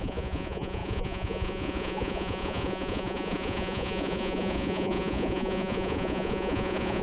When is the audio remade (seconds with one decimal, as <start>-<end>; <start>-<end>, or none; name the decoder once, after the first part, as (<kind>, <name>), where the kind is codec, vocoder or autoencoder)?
0.0-7.0 (vocoder, Vocos)